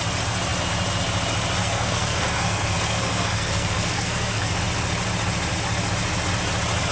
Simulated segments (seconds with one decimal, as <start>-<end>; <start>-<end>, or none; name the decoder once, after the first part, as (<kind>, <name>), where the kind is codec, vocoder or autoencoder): 1.6-4.5 (codec, SNAC)

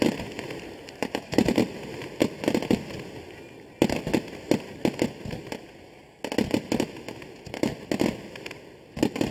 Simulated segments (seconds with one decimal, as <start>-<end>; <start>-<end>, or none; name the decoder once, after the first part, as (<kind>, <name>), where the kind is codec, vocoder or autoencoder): 1.0-2.1 (vocoder, BigVGAN v2)

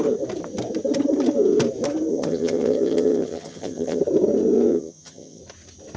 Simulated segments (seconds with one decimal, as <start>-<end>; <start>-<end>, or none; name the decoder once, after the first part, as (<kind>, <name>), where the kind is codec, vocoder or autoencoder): 2.1-4.0 (vocoder, HiFi-GAN); 4.7-5.4

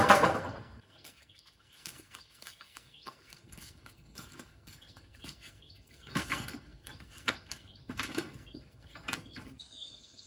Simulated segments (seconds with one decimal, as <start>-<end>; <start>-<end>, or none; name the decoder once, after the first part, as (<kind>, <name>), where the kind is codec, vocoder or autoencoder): 0.0-10.3 (codec, SNAC)

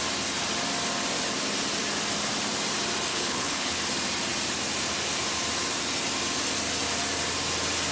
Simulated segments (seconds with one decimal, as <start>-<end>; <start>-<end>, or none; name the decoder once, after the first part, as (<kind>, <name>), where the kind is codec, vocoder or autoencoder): 3.1-3.8 (codec, HILCodec)

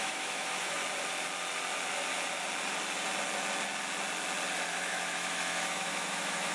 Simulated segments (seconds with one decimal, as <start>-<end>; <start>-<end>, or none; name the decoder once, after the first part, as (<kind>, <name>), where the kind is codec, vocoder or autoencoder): 0.0-0.8 (autoencoder, DAC-VAE); 4.7-6.5